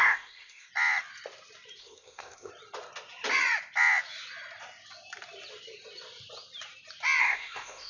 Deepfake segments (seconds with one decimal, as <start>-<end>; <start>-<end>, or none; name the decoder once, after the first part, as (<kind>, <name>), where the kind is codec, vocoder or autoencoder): 0.0-0.7 (codec, ZipCodec); 1.8-2.5; 7.2-7.9